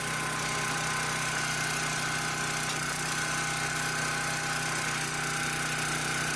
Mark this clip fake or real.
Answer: real